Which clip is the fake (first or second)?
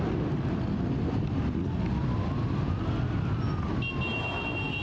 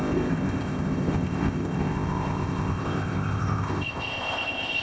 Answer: second